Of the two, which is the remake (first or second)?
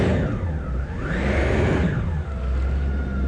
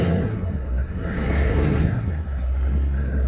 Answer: second